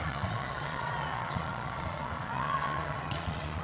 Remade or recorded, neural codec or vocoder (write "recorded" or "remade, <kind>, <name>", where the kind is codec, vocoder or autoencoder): remade, vocoder, Vocos